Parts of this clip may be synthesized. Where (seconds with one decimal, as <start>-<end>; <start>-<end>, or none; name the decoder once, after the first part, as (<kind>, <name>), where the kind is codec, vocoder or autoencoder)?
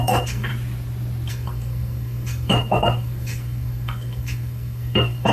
0.0-0.5 (codec, SNAC); 1.3-5.3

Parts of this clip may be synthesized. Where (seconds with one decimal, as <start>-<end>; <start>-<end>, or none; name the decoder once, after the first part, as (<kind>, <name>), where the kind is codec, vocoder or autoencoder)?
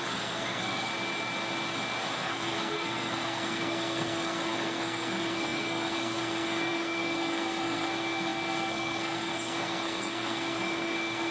0.0-0.9 (codec, SNAC); 2.2-11.3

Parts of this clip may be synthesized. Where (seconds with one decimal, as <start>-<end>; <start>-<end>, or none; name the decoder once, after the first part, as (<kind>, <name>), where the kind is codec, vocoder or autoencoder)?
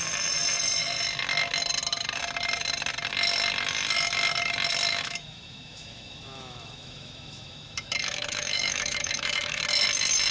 4.9-9.6 (autoencoder, DAC-VAE)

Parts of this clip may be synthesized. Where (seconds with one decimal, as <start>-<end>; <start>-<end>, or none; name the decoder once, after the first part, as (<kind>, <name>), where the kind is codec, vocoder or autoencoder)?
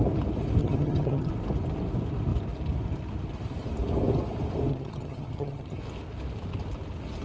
0.6-1.3 (vocoder, HiFi-GAN); 4.7-5.8